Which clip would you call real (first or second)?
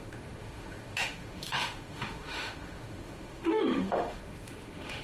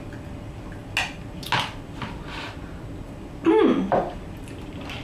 second